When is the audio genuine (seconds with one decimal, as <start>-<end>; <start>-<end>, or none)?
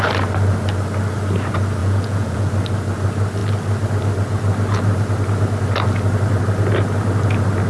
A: 0.0-1.8; 2.5-7.7